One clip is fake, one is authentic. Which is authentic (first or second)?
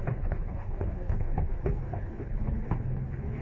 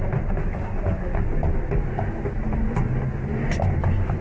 second